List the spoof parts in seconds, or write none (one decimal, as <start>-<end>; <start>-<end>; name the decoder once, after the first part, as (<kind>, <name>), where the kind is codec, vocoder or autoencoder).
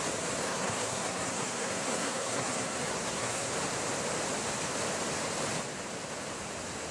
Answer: 0.4-3.5 (codec, SNAC)